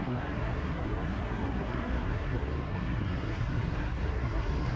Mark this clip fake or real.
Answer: fake